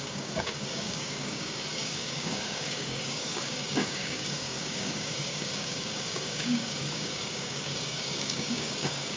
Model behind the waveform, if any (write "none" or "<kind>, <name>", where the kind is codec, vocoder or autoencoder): codec, DAC